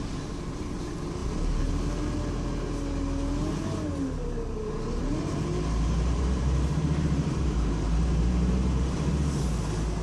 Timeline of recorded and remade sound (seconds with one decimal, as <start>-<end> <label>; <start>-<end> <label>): 0.0-1.2 recorded; 1.2-1.7 remade; 1.7-5.0 recorded; 5.0-9.1 remade; 9.1-10.0 recorded